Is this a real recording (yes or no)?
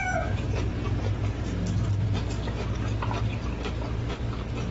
yes